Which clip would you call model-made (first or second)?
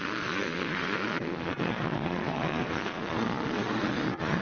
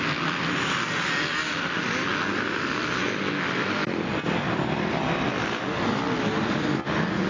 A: first